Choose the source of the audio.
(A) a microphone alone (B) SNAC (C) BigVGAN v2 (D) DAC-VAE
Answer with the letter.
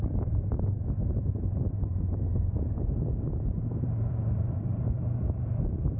C